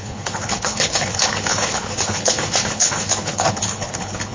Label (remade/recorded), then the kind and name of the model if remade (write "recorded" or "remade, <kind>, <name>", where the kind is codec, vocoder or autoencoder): remade, codec, HILCodec